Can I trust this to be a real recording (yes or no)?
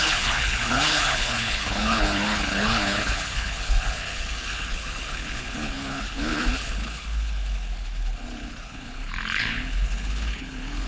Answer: no